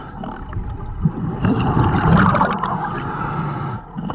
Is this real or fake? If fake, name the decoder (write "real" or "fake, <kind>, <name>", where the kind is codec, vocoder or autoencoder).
fake, vocoder, BigVGAN v2